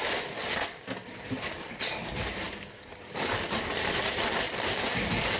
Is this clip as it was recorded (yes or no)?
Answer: yes